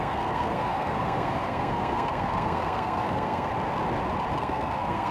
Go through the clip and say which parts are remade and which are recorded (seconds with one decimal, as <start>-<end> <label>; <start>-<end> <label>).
0.0-3.5 remade; 3.5-4.4 recorded; 4.4-5.1 remade